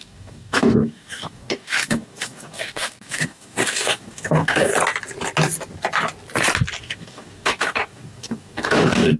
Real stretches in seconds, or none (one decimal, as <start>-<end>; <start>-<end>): 4.7-6.8